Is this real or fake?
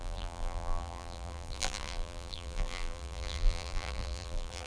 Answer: fake